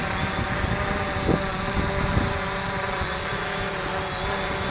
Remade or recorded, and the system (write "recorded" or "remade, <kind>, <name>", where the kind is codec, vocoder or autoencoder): recorded